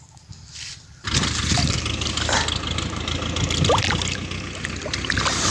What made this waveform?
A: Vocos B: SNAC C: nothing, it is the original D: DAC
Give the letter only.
C